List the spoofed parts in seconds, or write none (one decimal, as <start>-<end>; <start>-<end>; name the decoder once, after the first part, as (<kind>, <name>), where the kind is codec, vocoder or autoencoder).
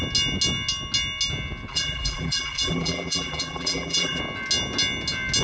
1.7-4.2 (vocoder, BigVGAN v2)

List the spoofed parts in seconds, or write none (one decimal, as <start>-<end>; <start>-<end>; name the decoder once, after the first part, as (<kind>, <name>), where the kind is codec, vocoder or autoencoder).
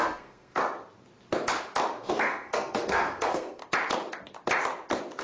0.0-0.6 (codec, SNAC); 2.1-3.6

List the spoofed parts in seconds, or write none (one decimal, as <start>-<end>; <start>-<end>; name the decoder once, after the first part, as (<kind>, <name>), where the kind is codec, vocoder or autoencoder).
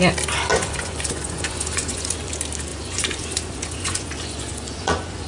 0.5-2.3 (vocoder, Vocos); 2.7-5.3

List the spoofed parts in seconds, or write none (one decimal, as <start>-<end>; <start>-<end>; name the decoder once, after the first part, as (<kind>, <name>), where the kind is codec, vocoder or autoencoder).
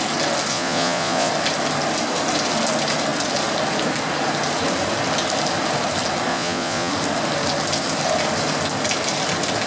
0.5-1.3 (vocoder, Vocos); 6.3-6.9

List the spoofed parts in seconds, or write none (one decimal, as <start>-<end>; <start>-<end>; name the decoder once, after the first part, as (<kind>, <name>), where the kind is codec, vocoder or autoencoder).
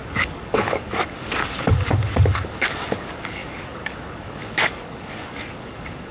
0.0-6.1 (codec, DAC)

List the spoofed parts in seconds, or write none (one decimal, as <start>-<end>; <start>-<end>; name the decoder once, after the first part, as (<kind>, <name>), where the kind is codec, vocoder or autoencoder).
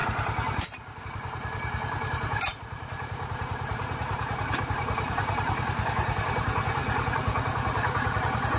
1.0-6.8 (vocoder, BigVGAN v2); 8.2-8.6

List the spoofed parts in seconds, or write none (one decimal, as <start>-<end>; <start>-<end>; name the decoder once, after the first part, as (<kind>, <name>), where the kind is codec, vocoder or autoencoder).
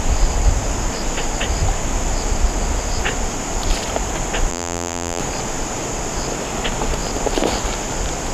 4.5-5.2 (vocoder, BigVGAN v2)